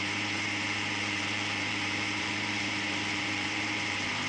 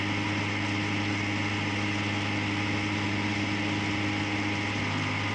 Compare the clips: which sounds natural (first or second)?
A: second